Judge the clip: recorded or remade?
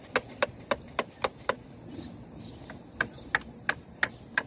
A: recorded